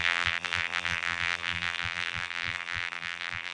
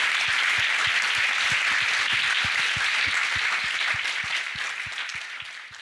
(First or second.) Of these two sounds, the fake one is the first